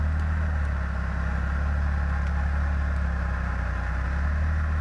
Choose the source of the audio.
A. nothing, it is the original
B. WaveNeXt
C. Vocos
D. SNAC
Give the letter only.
A